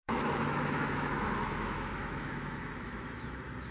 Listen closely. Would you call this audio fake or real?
fake